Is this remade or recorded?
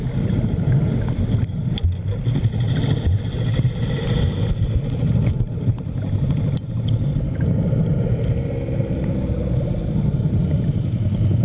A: recorded